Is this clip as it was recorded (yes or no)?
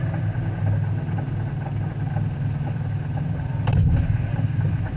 yes